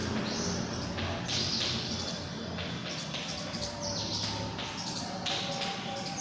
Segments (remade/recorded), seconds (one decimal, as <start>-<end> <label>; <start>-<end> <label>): 0.0-6.2 recorded